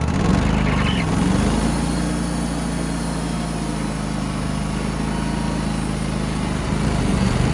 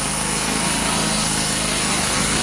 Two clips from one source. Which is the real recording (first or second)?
first